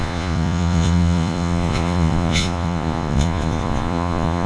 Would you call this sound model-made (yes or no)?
yes